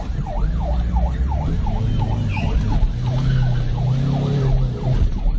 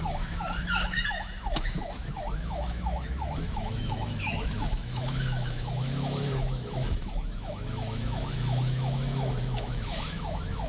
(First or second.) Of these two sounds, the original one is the first